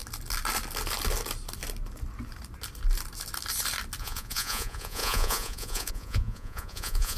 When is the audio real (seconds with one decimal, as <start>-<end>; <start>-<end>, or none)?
0.0-4.0